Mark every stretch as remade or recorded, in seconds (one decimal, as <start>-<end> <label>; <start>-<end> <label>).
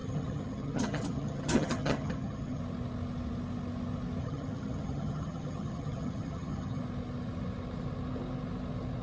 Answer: 0.0-2.6 remade; 2.6-4.2 recorded; 4.2-6.8 remade; 6.8-9.0 recorded